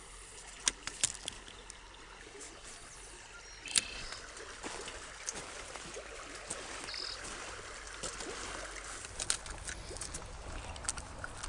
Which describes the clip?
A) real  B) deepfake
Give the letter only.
A